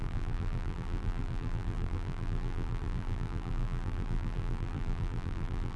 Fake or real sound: fake